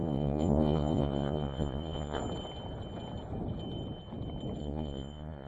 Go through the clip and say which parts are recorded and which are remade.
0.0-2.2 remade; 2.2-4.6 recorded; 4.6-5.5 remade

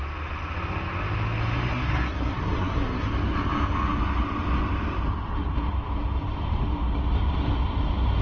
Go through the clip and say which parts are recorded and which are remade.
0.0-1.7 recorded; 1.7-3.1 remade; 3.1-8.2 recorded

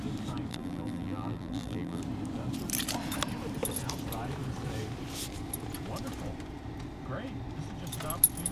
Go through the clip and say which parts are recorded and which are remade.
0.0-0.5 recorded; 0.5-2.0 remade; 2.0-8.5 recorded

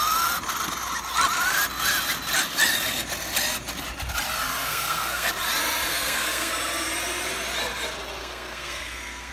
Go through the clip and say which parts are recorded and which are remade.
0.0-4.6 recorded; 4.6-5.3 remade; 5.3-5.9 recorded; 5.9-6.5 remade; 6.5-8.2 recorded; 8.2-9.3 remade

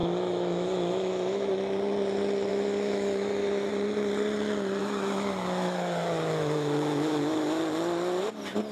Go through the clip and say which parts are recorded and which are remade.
0.0-1.5 remade; 1.5-2.5 recorded; 2.5-3.7 remade; 3.7-4.8 recorded; 4.8-7.6 remade; 7.6-8.7 recorded

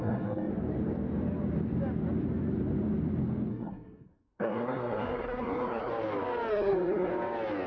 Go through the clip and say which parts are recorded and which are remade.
0.0-0.5 remade; 0.5-3.5 recorded; 3.5-5.9 remade; 5.9-6.5 recorded; 6.5-7.1 remade; 7.1-7.7 recorded

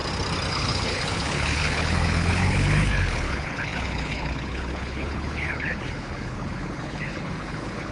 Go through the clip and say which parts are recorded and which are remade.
0.0-0.5 recorded; 0.5-7.9 remade

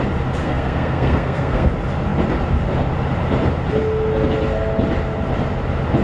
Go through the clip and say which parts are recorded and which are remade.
0.0-0.4 recorded; 0.4-1.7 remade; 1.7-6.0 recorded